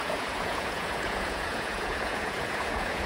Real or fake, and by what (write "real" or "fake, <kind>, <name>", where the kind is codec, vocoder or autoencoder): fake, vocoder, Vocos